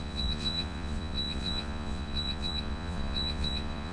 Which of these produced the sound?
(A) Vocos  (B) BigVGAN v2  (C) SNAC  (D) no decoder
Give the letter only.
A